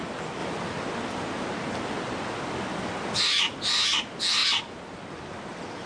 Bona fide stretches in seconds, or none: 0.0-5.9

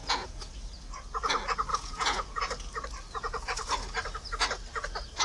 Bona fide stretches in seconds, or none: 0.5-1.7; 2.4-5.2

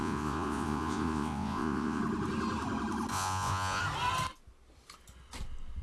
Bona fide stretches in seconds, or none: 2.0-3.1; 3.8-5.8

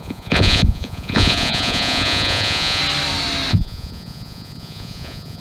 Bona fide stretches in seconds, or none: 2.8-3.5

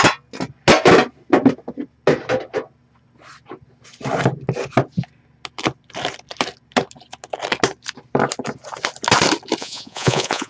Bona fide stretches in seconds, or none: 0.0-9.6